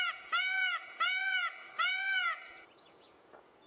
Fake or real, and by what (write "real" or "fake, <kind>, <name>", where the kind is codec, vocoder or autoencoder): fake, vocoder, Vocos